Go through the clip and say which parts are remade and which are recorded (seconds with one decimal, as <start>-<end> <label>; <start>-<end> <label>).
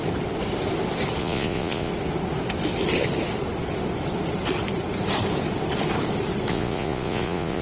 0.0-1.2 recorded; 1.2-1.9 remade; 1.9-6.5 recorded; 6.5-7.6 remade